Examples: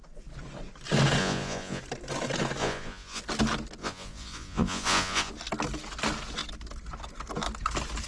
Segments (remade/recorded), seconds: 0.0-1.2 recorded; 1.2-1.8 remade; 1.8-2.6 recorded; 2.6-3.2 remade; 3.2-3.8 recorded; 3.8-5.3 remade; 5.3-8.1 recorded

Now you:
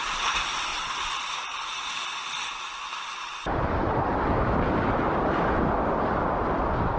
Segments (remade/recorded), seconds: 0.0-0.7 recorded; 0.7-1.9 remade; 1.9-7.0 recorded

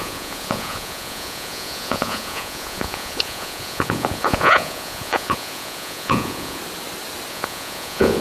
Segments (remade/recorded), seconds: 0.0-6.6 remade; 6.6-7.3 recorded; 7.3-8.2 remade

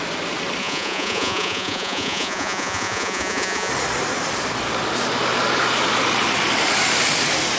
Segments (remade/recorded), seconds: 0.0-0.6 recorded; 0.6-3.7 remade; 3.7-7.6 recorded

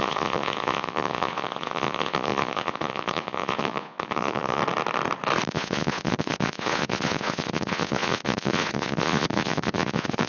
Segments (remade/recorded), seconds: 0.0-4.6 remade; 4.6-5.5 recorded; 5.5-10.3 remade